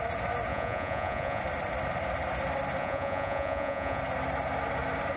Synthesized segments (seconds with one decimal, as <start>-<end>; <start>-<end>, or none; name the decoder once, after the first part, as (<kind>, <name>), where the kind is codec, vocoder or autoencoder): 0.5-1.4 (vocoder, Vocos); 2.8-4.0